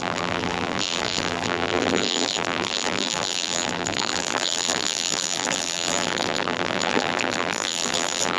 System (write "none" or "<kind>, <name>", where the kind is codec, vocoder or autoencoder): vocoder, BigVGAN v2